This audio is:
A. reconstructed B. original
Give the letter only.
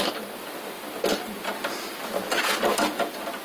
B